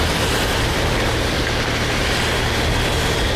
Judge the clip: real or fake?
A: real